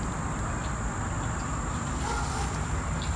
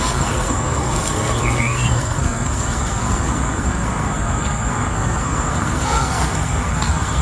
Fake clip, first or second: second